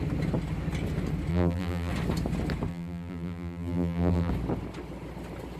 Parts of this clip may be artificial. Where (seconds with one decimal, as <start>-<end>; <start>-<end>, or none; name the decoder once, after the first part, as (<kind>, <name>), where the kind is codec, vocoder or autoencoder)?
1.3-1.9 (vocoder, BigVGAN v2); 2.7-4.3